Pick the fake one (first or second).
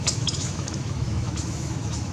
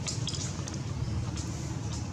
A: first